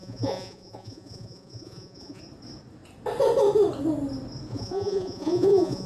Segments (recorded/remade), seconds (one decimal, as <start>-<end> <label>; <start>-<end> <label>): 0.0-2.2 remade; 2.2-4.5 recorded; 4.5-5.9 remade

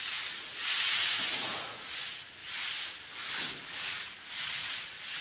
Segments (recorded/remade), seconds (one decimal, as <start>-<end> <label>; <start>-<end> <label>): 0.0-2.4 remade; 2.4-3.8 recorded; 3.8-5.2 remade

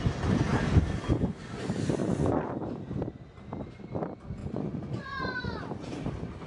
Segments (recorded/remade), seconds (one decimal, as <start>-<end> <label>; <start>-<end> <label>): 0.0-2.0 recorded; 2.0-2.5 remade; 2.5-4.4 recorded; 4.4-5.6 remade; 5.6-6.5 recorded

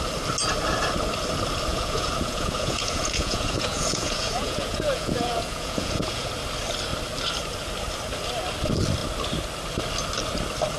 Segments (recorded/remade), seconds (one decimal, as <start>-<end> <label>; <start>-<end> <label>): 0.0-1.7 recorded; 1.7-6.3 remade; 6.3-10.8 recorded

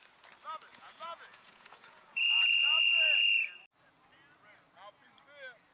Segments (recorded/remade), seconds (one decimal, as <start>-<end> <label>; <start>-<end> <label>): 0.0-0.7 recorded; 0.7-3.5 remade; 3.5-5.7 recorded